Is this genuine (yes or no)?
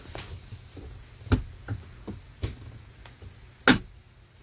yes